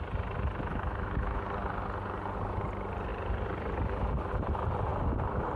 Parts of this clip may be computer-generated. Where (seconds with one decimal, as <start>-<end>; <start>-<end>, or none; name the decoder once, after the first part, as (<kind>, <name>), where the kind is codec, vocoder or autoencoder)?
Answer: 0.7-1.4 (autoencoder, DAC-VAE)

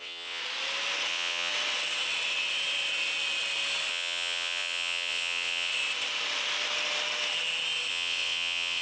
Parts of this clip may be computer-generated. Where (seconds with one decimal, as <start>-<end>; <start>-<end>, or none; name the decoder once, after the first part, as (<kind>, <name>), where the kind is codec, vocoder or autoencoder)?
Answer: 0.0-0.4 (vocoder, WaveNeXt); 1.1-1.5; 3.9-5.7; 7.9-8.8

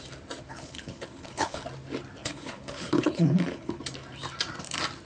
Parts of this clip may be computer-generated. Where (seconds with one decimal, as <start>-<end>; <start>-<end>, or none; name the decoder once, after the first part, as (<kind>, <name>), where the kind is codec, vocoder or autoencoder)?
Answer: 0.5-1.6 (codec, HILCodec); 2.2-3.8

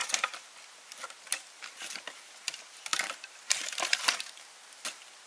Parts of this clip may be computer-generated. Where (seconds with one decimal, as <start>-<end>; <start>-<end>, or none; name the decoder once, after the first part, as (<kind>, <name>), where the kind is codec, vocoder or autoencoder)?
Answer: 0.0-0.5 (vocoder, BigVGAN v2); 1.3-2.4; 2.9-4.4

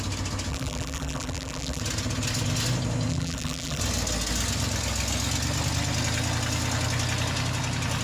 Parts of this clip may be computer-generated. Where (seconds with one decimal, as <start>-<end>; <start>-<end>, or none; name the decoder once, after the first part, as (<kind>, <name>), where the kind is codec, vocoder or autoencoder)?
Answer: 0.5-1.8 (vocoder, BigVGAN v2); 3.1-3.8

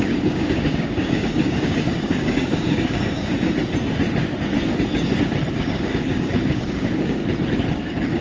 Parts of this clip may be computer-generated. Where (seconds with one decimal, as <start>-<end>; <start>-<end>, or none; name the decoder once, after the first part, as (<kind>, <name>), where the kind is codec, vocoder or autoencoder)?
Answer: 0.0-3.3 (codec, DAC); 5.5-7.2; 7.7-8.2